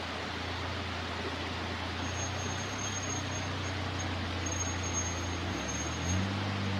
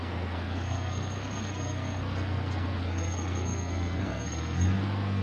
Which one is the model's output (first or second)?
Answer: second